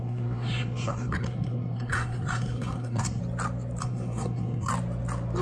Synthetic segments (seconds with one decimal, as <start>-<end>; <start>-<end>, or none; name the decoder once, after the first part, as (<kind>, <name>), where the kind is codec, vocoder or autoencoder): 0.0-3.2 (codec, SNAC); 3.8-4.7